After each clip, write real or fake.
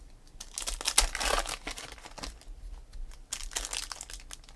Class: real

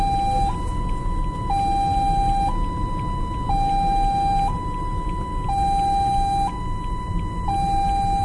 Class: real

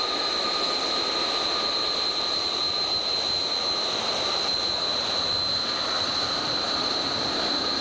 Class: real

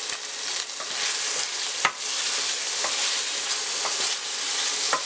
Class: real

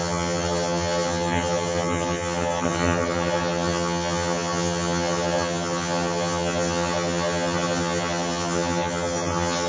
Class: fake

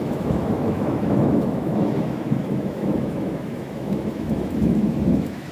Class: fake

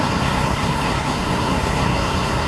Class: fake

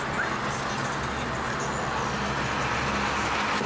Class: real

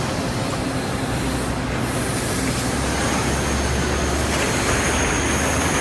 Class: real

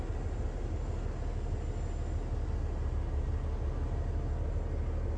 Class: real